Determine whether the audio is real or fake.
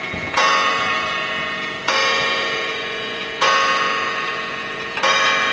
fake